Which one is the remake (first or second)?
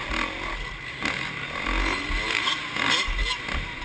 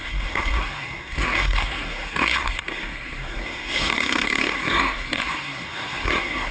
second